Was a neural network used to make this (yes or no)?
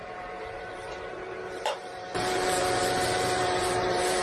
yes